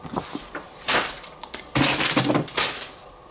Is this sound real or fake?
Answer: real